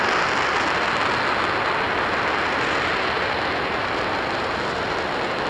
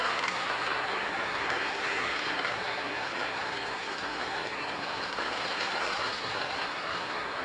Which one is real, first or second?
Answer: first